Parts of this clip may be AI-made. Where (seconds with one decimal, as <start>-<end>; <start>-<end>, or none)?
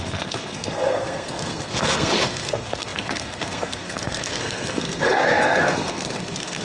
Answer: 0.0-6.6